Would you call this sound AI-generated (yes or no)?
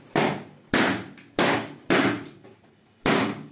no